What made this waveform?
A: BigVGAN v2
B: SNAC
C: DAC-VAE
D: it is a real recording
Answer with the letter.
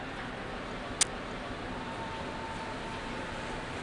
D